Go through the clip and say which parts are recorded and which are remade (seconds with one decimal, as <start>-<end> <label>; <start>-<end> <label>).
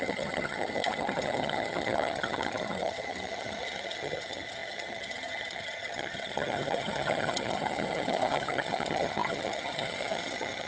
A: 0.0-10.7 remade